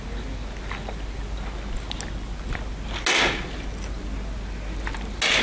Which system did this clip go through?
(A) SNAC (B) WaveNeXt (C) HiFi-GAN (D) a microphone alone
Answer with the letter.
D